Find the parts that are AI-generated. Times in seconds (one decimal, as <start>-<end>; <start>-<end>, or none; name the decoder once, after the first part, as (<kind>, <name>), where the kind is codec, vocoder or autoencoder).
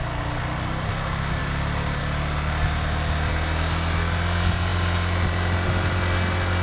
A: 1.4-2.0 (vocoder, BigVGAN v2)